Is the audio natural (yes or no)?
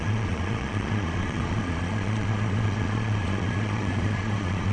no